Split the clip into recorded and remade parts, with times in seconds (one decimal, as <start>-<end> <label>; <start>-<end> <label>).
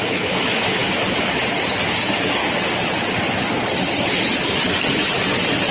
0.0-0.8 remade; 0.8-2.0 recorded; 2.0-2.4 remade; 2.4-5.7 recorded